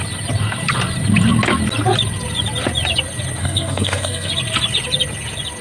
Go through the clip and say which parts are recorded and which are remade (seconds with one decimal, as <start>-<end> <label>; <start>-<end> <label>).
0.0-3.4 recorded; 3.4-4.3 remade; 4.3-5.6 recorded